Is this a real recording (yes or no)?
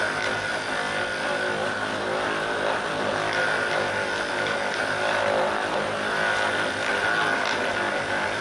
yes